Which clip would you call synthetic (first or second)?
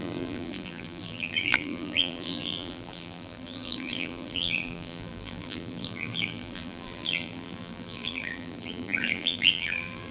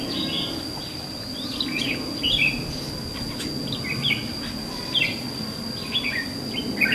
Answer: first